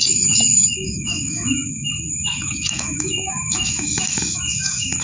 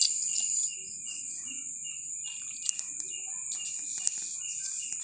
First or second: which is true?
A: second